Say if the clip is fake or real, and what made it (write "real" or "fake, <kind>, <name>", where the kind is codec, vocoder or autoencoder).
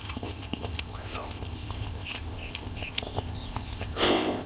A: fake, codec, ZipCodec